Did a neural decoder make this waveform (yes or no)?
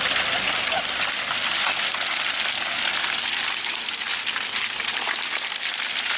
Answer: no